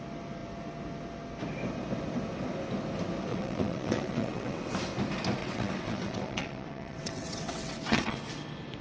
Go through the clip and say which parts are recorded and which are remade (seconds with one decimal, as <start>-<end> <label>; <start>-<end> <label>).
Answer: 0.0-3.3 recorded; 3.3-4.7 remade; 4.7-5.4 recorded; 5.4-8.2 remade; 8.2-8.8 recorded

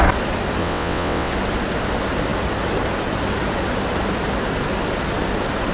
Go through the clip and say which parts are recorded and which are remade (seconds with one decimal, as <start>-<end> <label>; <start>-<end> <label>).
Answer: 0.0-0.6 recorded; 0.6-1.3 remade; 1.3-5.7 recorded

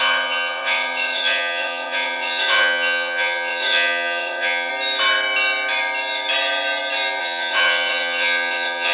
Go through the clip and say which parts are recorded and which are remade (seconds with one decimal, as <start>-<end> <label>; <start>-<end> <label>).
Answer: 0.0-4.7 remade; 4.7-7.2 recorded; 7.2-8.9 remade

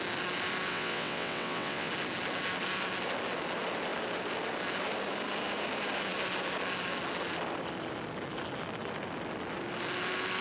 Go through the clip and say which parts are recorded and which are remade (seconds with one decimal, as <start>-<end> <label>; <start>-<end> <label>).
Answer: 0.0-0.7 recorded; 0.7-1.9 remade; 1.9-10.4 recorded

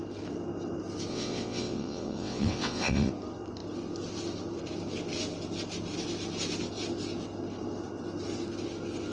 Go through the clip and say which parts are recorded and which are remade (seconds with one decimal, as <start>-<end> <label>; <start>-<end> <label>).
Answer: 0.0-1.1 recorded; 1.1-3.1 remade; 3.1-9.1 recorded

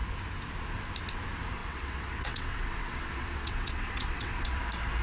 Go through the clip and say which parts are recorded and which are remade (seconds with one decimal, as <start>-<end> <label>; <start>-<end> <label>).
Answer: 0.0-1.6 recorded; 1.6-4.6 remade; 4.6-5.0 recorded

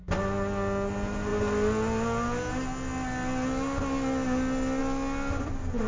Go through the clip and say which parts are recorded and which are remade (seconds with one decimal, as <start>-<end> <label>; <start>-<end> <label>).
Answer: 0.0-5.9 recorded

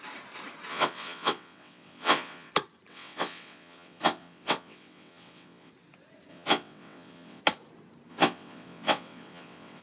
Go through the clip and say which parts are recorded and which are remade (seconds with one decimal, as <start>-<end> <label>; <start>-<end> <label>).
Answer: 0.0-0.7 recorded; 0.7-2.5 remade; 2.5-2.9 recorded; 2.9-5.7 remade; 5.7-6.3 recorded; 6.3-7.4 remade; 7.4-8.1 recorded; 8.1-9.8 remade